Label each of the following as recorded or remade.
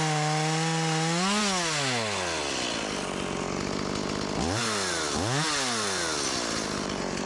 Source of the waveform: recorded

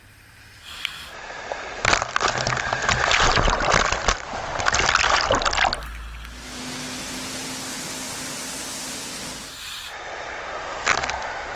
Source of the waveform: recorded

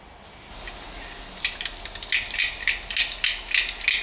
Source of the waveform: recorded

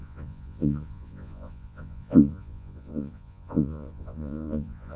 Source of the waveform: remade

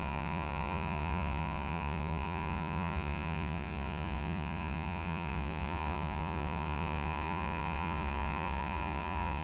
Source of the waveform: remade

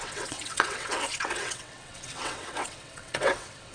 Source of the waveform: remade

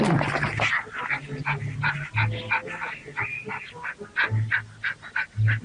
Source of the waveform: recorded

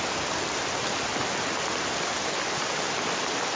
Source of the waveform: recorded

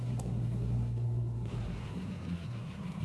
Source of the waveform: remade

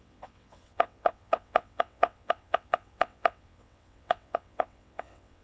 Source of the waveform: remade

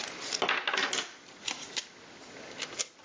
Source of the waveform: recorded